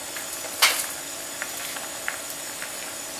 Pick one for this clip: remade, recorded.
recorded